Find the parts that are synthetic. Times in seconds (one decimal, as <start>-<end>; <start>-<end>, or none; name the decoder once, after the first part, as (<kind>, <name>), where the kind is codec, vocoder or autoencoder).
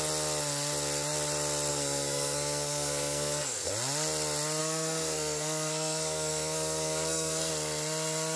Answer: 1.7-3.7 (codec, SNAC); 4.6-7.5